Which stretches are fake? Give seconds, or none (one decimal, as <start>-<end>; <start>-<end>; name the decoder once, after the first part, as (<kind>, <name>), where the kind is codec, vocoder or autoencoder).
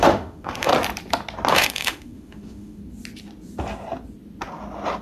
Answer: 0.0-0.7 (autoencoder, DAC-VAE); 1.5-2.8